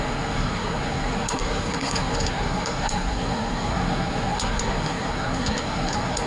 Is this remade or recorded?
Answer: remade